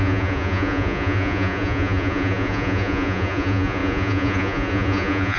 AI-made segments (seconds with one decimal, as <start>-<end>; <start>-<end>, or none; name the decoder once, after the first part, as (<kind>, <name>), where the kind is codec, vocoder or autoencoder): 0.0-5.4 (vocoder, Vocos)